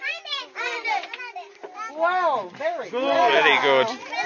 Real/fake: real